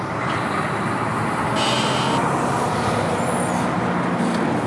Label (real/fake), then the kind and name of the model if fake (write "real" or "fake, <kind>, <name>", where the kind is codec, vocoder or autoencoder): real